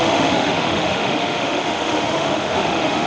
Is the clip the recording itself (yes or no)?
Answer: no